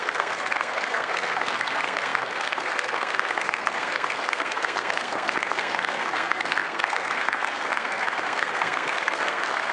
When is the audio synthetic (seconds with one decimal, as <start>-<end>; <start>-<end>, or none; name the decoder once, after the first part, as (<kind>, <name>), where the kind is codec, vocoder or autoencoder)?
0.0-9.7 (codec, SNAC)